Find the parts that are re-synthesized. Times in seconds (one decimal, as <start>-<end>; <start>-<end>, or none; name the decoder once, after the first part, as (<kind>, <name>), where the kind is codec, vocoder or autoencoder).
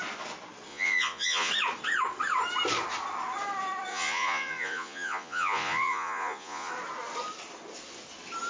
0.7-1.5 (vocoder, Vocos); 3.9-6.7